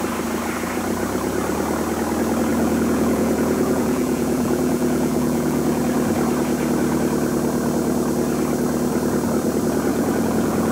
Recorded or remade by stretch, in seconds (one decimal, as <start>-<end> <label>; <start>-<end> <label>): 0.0-2.5 recorded; 2.5-5.8 remade; 5.8-9.9 recorded; 9.9-10.7 remade